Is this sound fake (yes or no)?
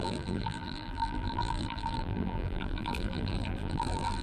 yes